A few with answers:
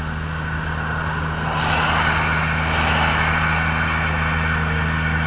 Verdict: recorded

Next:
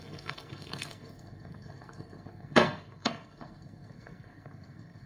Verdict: remade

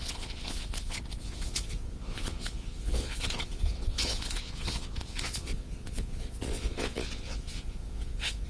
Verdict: remade